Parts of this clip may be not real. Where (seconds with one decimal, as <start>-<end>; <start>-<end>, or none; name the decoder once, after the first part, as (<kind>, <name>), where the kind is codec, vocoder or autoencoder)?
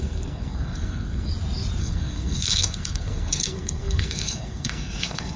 0.0-1.3 (codec, SNAC); 1.8-5.4